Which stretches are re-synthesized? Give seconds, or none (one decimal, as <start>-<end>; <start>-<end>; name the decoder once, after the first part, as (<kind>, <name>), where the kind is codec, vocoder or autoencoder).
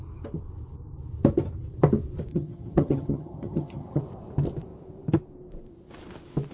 2.3-4.0 (vocoder, HiFi-GAN)